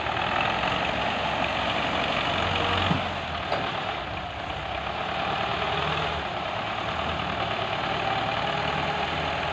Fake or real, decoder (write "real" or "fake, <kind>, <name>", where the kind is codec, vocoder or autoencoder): real